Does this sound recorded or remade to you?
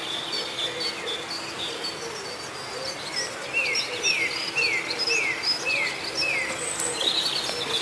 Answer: recorded